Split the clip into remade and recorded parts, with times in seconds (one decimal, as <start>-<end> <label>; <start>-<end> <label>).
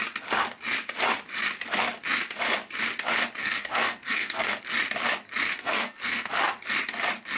0.0-3.4 recorded; 3.4-4.5 remade; 4.5-5.5 recorded; 5.5-6.3 remade; 6.3-7.4 recorded